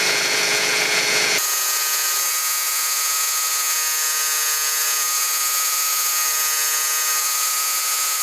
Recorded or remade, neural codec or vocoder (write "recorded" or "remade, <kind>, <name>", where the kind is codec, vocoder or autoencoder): remade, vocoder, Vocos